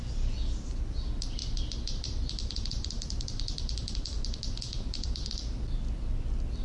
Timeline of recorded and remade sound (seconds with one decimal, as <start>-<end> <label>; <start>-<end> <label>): 0.0-1.4 recorded; 1.4-5.3 remade; 5.3-6.6 recorded